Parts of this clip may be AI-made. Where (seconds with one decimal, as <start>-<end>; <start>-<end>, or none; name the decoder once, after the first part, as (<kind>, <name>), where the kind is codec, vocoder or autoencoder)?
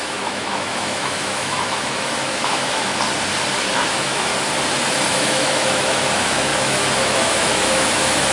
0.0-2.9 (autoencoder, DAC-VAE); 3.7-4.3; 5.1-8.3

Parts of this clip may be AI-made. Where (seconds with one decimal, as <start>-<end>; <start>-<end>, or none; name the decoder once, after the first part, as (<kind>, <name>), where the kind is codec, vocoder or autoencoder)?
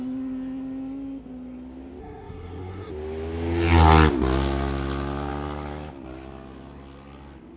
2.0-2.9 (codec, SNAC)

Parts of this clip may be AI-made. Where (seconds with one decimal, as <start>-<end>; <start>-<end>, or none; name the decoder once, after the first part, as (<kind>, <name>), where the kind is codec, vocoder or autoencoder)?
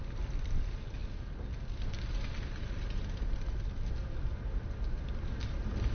none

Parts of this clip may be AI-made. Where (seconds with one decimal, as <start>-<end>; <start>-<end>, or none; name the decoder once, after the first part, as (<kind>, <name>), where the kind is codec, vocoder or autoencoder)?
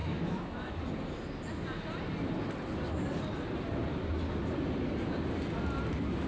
0.0-0.8 (autoencoder, DAC-VAE)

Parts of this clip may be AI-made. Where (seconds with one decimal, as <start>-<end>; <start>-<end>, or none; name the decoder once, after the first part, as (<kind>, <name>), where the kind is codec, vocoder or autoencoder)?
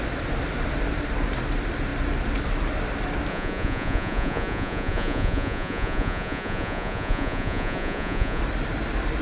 3.3-8.4 (vocoder, Vocos)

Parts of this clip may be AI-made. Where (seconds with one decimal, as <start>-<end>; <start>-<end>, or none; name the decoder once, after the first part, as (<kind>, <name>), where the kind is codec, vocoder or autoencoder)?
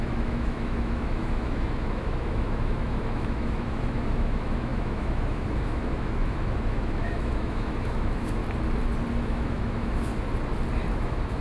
0.0-8.4 (autoencoder, DAC-VAE); 9.2-10.1; 10.9-11.4